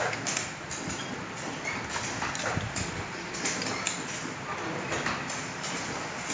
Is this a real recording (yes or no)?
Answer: yes